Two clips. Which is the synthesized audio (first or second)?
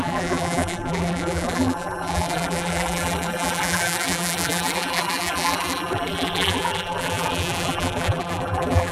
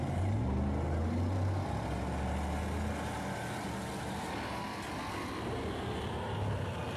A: first